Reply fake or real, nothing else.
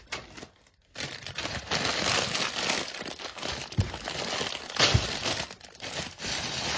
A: real